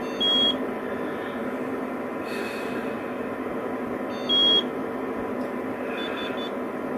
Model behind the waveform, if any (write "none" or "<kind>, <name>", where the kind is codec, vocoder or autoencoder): none